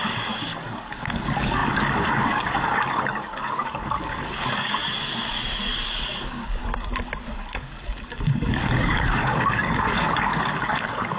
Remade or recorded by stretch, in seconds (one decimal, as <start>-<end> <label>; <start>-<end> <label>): 0.0-6.6 remade; 6.6-7.3 recorded; 7.3-11.2 remade